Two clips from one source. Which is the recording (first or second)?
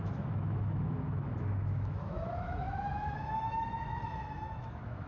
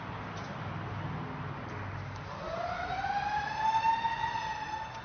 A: second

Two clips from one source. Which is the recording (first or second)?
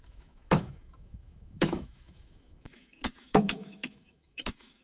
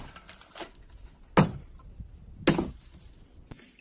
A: second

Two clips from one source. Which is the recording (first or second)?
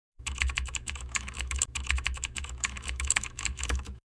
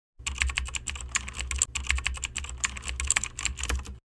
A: second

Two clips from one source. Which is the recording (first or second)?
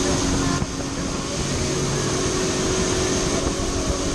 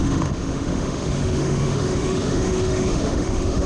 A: first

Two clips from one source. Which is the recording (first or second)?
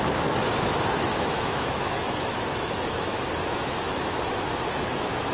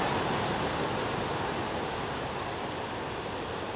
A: second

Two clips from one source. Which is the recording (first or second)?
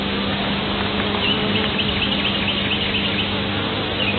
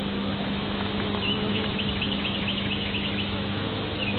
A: first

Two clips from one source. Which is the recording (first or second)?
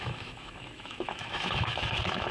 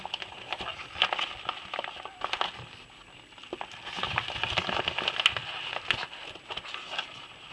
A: second